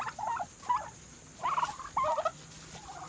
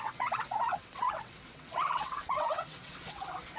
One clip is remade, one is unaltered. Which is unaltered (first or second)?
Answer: first